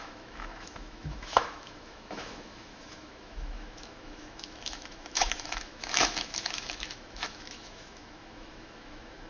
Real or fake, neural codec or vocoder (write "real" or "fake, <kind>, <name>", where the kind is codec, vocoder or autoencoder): fake, autoencoder, DAC-VAE